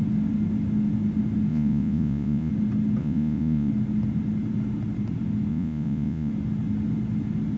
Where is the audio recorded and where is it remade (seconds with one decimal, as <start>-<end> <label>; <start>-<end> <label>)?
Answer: 0.0-1.5 recorded; 1.5-2.5 remade; 2.5-3.0 recorded; 3.0-3.7 remade; 3.7-5.5 recorded; 5.5-6.3 remade; 6.3-7.6 recorded